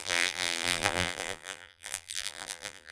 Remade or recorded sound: remade